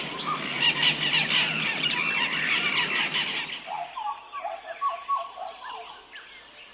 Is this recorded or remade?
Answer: recorded